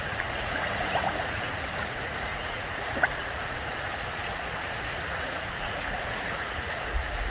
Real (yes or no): no